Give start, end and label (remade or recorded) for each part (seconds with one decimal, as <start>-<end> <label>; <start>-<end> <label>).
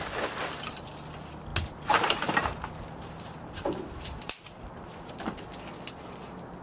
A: 0.0-1.5 recorded; 1.5-5.1 remade; 5.1-6.6 recorded